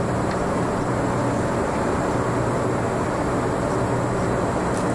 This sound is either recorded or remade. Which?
recorded